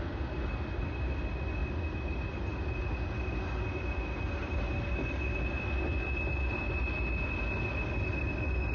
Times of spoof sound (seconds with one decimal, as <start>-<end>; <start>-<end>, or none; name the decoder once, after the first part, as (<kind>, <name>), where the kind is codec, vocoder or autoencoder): none